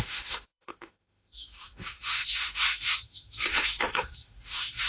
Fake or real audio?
fake